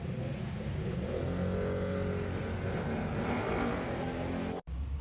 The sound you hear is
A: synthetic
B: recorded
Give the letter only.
B